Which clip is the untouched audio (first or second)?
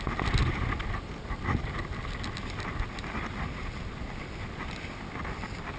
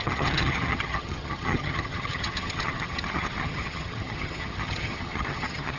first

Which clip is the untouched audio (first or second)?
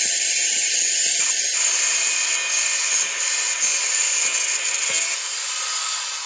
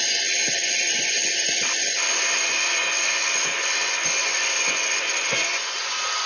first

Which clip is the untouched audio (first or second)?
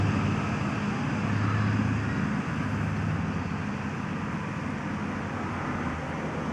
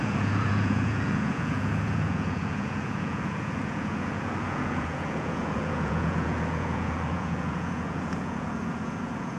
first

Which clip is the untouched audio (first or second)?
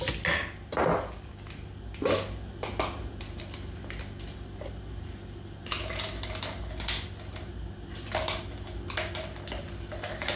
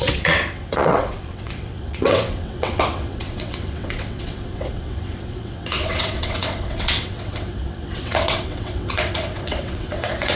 first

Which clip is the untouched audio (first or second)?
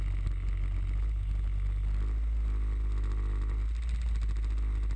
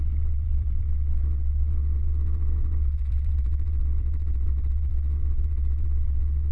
first